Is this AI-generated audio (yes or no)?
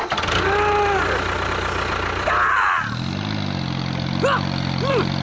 no